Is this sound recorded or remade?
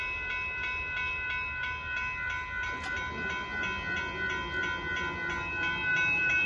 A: recorded